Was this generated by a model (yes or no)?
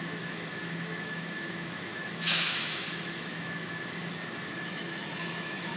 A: yes